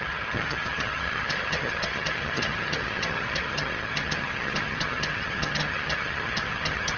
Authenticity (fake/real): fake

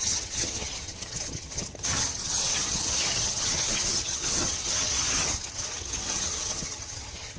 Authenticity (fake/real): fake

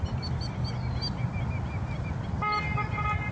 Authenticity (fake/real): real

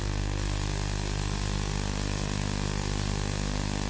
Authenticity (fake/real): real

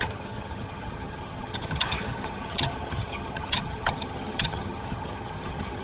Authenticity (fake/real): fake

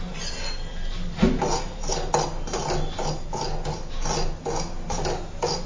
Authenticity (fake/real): real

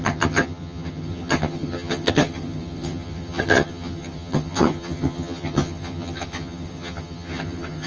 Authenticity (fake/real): fake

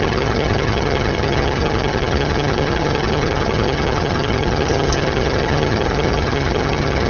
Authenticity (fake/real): fake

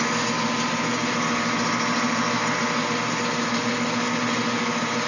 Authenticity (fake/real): real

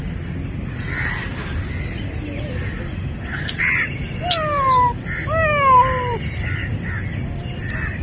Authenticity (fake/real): real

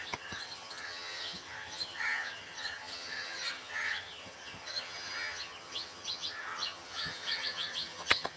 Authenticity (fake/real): fake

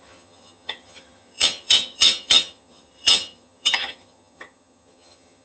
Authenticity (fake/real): fake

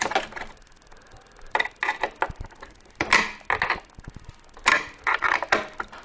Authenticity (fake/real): real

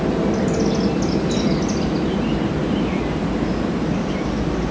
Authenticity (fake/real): real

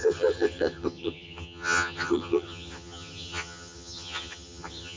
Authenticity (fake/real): fake